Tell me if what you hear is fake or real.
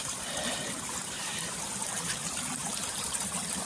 fake